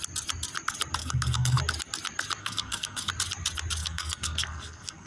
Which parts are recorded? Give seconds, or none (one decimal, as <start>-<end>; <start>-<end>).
0.0-1.0; 1.6-2.4; 3.1-3.8